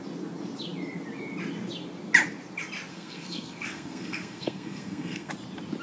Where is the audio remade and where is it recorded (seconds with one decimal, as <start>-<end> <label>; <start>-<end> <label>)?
0.0-2.9 recorded; 2.9-5.3 remade; 5.3-5.8 recorded

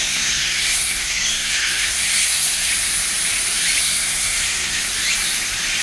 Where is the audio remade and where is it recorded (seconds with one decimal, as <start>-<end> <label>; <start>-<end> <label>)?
0.0-2.7 remade; 2.7-3.8 recorded; 3.8-4.8 remade; 4.8-5.8 recorded